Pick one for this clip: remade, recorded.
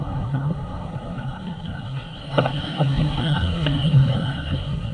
remade